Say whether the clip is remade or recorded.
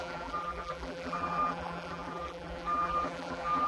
remade